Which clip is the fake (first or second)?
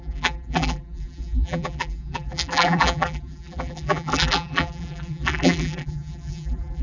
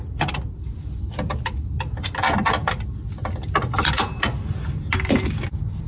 first